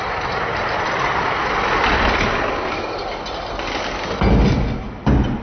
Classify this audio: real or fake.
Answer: real